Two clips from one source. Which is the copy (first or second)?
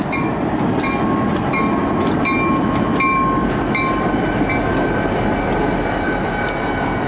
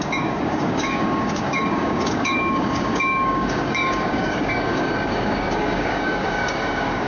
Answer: second